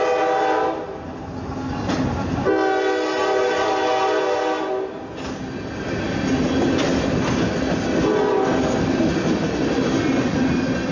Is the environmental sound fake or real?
real